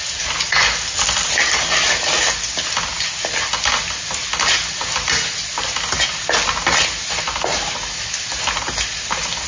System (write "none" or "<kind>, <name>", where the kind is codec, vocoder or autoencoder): none